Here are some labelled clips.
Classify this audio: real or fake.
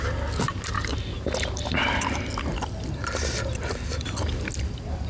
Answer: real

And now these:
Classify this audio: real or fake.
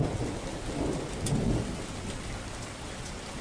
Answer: real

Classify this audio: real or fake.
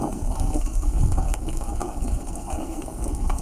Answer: fake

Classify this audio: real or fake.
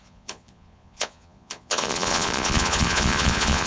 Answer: fake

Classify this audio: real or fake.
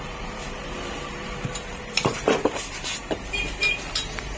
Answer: fake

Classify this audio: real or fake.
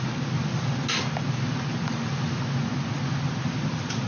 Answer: real